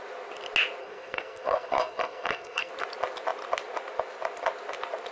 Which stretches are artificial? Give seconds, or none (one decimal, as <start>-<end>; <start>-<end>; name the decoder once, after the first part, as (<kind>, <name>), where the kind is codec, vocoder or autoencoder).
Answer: 0.8-2.7 (codec, SNAC)